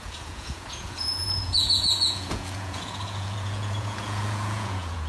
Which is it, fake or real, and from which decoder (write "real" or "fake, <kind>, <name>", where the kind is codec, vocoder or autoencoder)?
fake, vocoder, Vocos